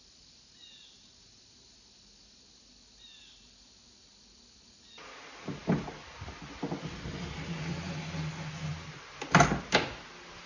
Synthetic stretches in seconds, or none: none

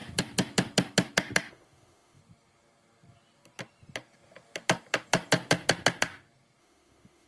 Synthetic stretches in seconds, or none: 1.5-2.2 (autoencoder, DAC-VAE); 6.6-7.3

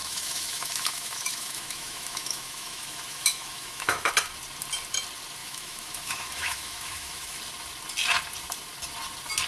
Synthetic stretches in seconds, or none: 0.0-4.1 (autoencoder, DAC-VAE); 5.4-7.4

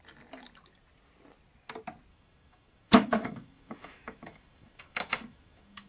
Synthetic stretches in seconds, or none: 2.1-5.9 (autoencoder, DAC-VAE)

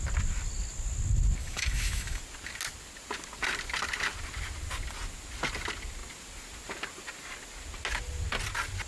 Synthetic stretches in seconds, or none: 1.4-2.2 (autoencoder, DAC-VAE)

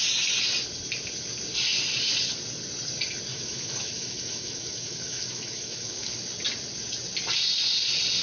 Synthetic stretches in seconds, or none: 3.3-6.3 (autoencoder, DAC-VAE)

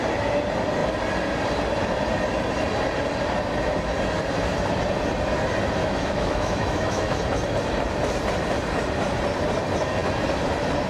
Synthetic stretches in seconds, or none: 5.8-7.2 (autoencoder, DAC-VAE)

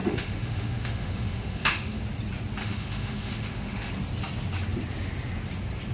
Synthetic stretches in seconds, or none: 0.0-2.0 (autoencoder, DAC-VAE); 2.6-3.9